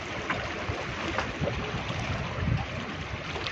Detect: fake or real real